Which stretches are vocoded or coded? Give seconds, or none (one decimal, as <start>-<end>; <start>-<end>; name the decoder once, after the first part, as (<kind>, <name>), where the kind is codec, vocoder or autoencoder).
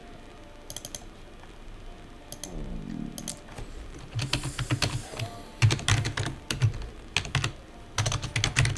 none